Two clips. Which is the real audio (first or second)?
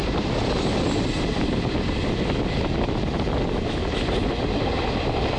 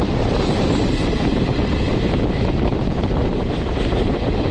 first